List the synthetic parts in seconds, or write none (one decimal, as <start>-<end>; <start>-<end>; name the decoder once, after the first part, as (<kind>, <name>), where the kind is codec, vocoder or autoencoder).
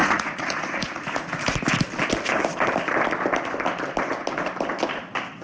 0.0-1.4 (vocoder, Vocos)